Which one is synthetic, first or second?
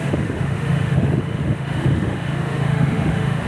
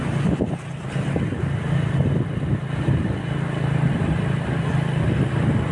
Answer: first